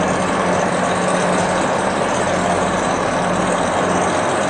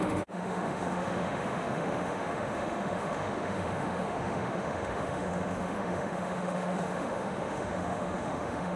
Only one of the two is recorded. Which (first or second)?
first